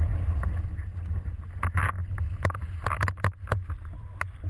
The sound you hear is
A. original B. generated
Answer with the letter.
A